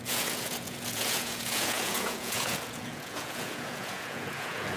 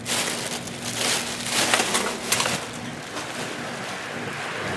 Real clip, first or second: second